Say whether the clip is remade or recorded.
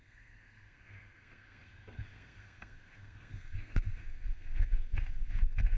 remade